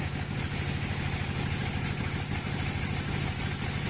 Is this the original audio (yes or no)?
yes